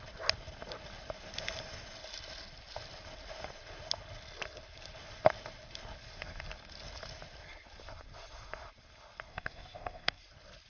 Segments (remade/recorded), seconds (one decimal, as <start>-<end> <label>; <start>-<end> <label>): 0.0-9.3 recorded; 9.3-10.2 remade; 10.2-10.7 recorded